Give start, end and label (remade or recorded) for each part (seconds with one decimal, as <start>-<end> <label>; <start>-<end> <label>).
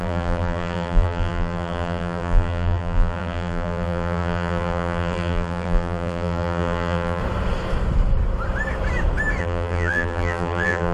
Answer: 0.0-7.2 remade; 7.2-9.4 recorded; 9.4-10.9 remade